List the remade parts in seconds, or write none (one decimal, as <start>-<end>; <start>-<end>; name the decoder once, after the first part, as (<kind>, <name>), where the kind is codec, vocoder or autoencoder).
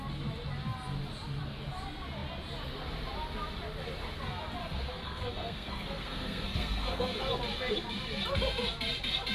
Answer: 4.6-7.2 (codec, SNAC)